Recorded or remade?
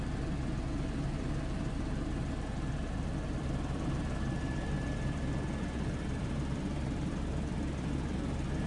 remade